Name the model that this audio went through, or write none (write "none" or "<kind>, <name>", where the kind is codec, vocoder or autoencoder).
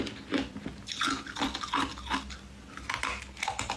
none